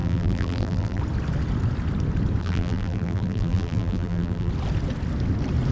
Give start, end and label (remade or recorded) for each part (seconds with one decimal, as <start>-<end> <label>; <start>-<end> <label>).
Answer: 0.0-1.0 remade; 1.0-2.4 recorded; 2.4-4.5 remade; 4.5-5.7 recorded